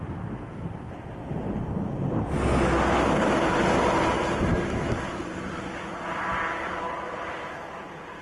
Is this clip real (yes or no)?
yes